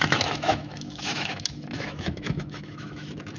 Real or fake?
fake